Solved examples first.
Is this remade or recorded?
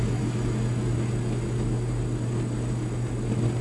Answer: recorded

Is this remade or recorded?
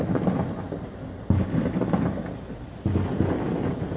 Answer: recorded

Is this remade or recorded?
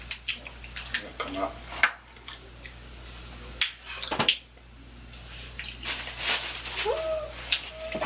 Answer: recorded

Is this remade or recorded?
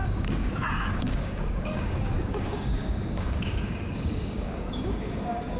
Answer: remade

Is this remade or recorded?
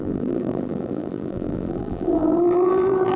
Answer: remade